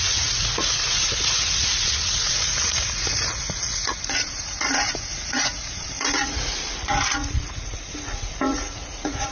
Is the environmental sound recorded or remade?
remade